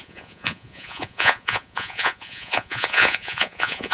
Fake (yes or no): yes